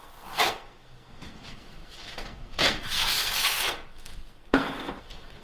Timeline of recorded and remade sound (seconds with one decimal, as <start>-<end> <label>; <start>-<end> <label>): 0.0-5.4 remade